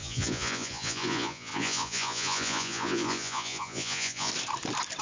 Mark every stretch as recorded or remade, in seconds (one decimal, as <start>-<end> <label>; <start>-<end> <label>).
0.0-4.3 remade; 4.3-5.0 recorded